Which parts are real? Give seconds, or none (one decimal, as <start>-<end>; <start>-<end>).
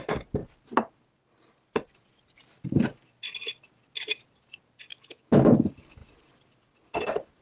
0.0-4.9; 5.5-7.4